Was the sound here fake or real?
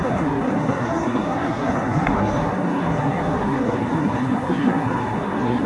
fake